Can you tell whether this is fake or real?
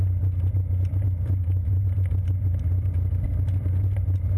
real